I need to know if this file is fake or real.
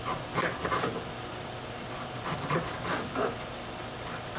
real